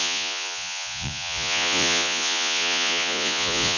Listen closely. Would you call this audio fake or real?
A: fake